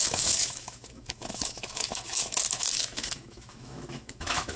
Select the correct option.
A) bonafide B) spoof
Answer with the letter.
B